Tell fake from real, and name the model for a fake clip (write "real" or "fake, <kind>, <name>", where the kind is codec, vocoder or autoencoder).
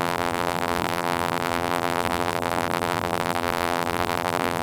fake, vocoder, BigVGAN v2